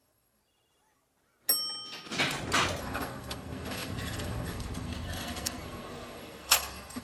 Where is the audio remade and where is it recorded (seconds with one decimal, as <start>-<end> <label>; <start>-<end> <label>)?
0.0-0.4 remade; 0.4-2.8 recorded; 2.8-7.0 remade